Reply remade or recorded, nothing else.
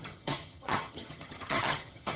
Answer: remade